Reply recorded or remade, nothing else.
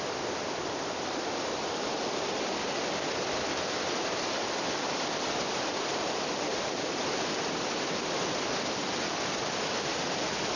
recorded